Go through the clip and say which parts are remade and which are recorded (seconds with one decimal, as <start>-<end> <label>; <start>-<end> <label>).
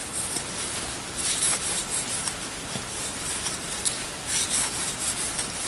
0.0-1.8 remade; 1.8-4.8 recorded; 4.8-5.7 remade